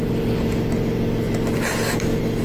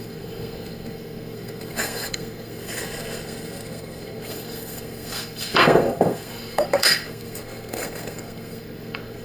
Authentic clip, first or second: first